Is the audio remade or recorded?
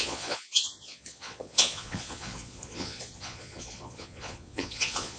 remade